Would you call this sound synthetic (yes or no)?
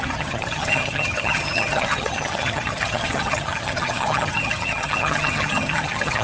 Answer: yes